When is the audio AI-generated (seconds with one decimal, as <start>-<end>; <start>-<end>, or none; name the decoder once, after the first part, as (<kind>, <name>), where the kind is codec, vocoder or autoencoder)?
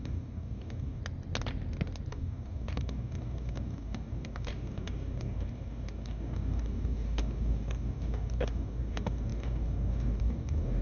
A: 0.0-1.0 (codec, DAC); 2.1-10.8